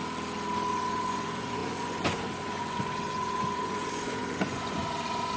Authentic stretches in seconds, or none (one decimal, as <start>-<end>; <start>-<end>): 0.0-0.7